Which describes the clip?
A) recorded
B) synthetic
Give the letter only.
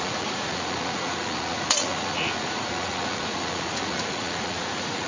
B